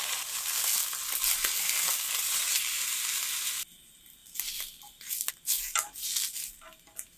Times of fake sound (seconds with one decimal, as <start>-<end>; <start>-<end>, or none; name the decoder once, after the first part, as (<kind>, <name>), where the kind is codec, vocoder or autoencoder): none

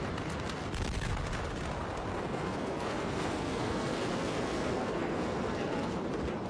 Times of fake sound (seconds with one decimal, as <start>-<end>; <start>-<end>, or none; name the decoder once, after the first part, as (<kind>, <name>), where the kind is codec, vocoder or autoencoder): 2.1-6.0 (codec, SNAC)

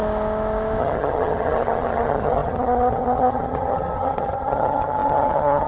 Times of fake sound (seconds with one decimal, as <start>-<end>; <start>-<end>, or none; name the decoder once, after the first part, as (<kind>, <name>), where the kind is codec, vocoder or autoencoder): 0.8-5.7 (vocoder, HiFi-GAN)

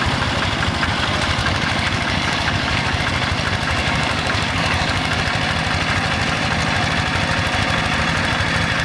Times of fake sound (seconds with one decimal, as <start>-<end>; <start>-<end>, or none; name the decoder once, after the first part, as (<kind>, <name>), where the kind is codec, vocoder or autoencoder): 1.4-3.0 (codec, DAC); 3.8-5.2

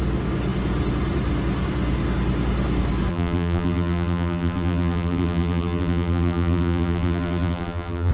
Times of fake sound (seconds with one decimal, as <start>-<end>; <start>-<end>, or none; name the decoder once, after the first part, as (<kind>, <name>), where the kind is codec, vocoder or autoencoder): 3.1-8.1 (vocoder, BigVGAN v2)

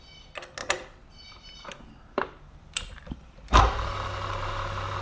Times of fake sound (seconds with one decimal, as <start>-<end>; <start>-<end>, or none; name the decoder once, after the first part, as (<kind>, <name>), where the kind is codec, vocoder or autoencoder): 0.6-3.6 (vocoder, BigVGAN v2)

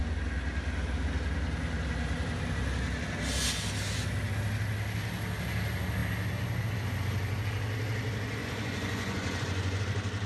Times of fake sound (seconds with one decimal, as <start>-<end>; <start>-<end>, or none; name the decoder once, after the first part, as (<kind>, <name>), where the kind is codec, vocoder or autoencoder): 8.4-9.8 (vocoder, Vocos)

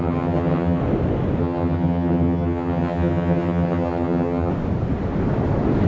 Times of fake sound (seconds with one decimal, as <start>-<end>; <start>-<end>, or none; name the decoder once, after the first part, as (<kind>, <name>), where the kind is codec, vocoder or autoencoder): 0.0-0.8 (vocoder, HiFi-GAN); 1.4-4.5